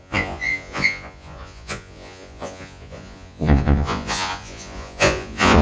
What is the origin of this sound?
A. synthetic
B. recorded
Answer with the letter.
A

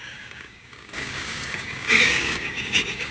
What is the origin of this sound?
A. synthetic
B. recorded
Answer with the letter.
A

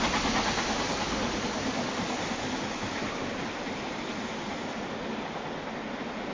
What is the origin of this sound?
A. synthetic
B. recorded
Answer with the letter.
B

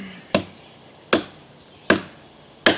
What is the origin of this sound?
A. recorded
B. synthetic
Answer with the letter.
A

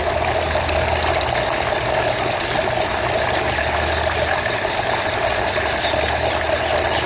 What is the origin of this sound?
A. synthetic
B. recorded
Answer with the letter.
B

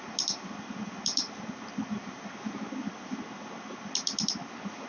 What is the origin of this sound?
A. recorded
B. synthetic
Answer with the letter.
A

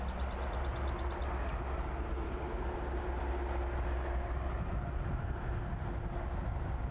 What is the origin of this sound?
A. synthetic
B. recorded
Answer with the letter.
B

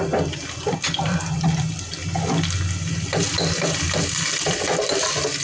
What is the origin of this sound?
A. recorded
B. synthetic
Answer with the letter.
A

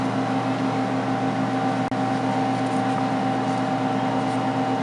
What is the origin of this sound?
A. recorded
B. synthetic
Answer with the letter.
A